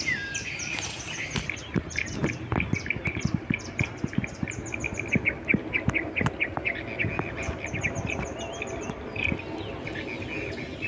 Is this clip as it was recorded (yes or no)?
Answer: yes